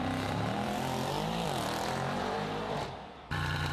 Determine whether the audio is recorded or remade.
remade